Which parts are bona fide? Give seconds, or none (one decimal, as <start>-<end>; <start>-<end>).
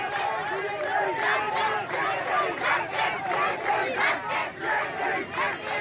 0.0-5.8